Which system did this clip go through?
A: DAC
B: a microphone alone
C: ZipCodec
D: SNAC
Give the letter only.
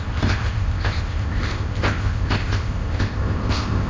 C